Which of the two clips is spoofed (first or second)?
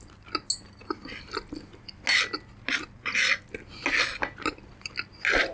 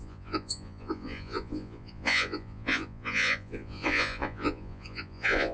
second